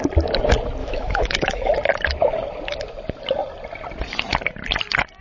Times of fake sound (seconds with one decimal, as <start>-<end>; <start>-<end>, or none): 0.8-1.7